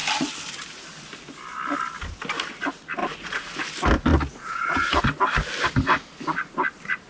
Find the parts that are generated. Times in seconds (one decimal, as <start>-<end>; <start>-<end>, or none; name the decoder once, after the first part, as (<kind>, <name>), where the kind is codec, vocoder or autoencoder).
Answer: 3.0-3.6 (vocoder, Vocos); 4.1-5.0